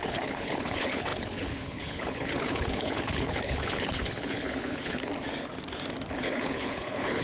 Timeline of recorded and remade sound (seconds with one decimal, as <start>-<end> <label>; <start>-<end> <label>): 0.0-5.1 remade; 5.1-6.2 recorded; 6.2-7.2 remade